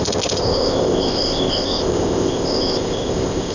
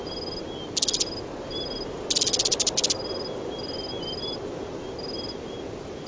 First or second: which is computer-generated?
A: first